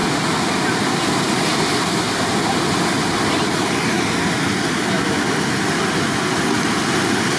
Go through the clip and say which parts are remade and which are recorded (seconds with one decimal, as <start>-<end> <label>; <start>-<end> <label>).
0.0-7.4 recorded